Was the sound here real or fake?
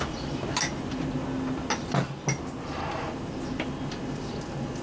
real